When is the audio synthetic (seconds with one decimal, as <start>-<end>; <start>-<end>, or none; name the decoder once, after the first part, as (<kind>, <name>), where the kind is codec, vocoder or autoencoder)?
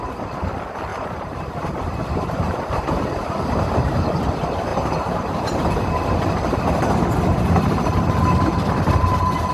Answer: 0.9-4.1 (vocoder, BigVGAN v2); 4.7-5.7